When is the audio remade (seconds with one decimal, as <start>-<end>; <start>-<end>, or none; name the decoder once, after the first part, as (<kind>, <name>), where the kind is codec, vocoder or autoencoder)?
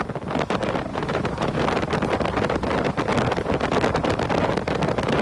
0.9-1.6 (autoencoder, DAC-VAE)